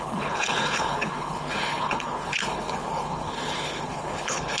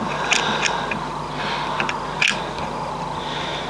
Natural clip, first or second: second